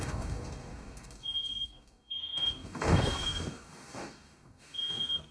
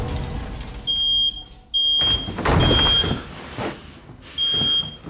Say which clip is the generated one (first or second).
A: first